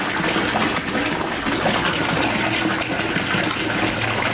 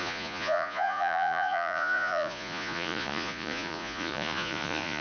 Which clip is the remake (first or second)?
second